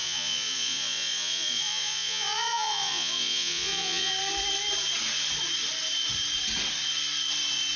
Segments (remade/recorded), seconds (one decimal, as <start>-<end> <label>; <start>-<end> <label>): 0.0-4.1 remade; 4.1-7.8 recorded